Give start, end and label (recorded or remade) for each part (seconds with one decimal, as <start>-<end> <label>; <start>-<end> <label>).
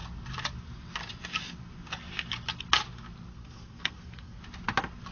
0.0-3.3 recorded; 3.3-4.4 remade; 4.4-5.1 recorded